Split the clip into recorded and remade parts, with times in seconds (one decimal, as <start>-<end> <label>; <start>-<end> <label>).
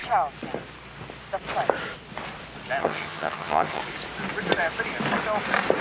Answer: 0.0-2.8 recorded; 2.8-3.8 remade; 3.8-5.8 recorded